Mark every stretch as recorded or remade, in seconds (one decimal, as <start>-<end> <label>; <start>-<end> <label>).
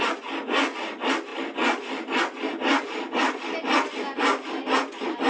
0.0-5.3 recorded